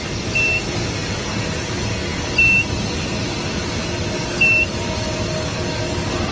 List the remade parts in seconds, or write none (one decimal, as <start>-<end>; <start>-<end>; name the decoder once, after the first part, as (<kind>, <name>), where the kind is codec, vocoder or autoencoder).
none